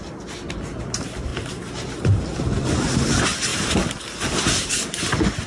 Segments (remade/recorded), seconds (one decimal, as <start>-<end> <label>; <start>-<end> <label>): 0.0-1.3 recorded; 1.3-2.0 remade; 2.0-3.5 recorded; 3.5-4.0 remade; 4.0-5.5 recorded